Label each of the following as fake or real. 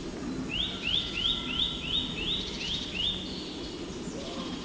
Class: real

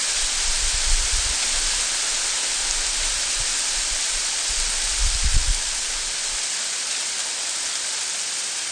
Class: real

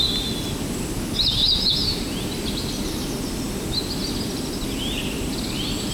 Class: real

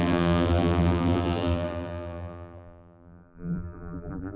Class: fake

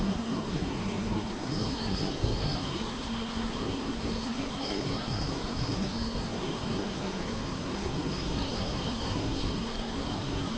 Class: fake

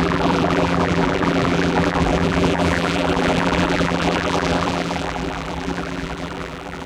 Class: fake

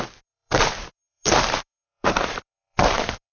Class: fake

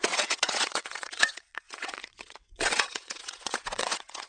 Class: fake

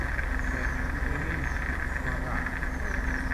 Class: real